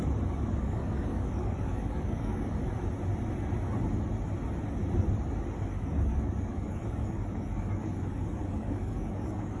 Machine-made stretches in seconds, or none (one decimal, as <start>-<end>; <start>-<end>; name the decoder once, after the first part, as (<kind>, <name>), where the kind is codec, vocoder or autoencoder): 0.6-2.6 (codec, DAC); 5.7-9.6